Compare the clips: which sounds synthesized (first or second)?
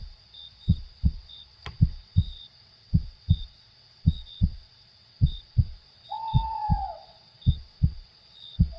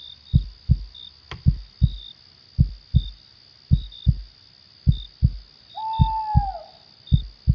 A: first